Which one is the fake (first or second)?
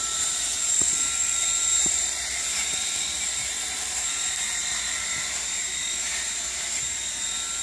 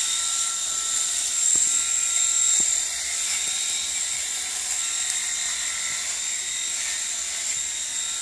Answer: first